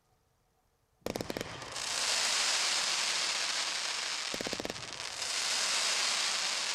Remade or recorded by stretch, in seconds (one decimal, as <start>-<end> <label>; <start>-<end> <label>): 0.0-1.6 recorded; 1.6-5.6 remade; 5.6-6.7 recorded